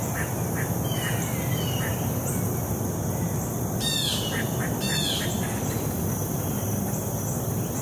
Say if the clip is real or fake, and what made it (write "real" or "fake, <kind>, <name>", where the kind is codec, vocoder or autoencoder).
real